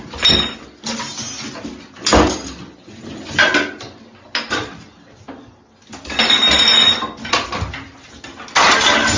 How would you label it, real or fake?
real